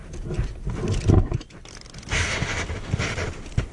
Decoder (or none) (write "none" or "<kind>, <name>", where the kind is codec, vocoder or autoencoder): none